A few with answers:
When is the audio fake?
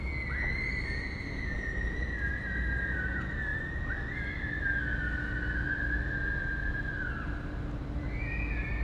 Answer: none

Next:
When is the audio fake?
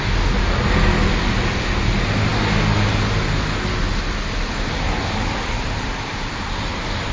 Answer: none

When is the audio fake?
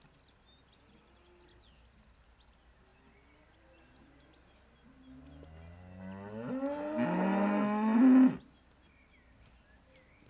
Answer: none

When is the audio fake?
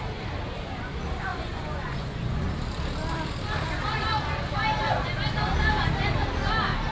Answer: 1.3-2.5 (vocoder, Vocos)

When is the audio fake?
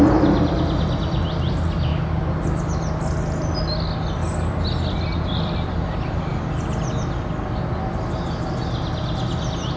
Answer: none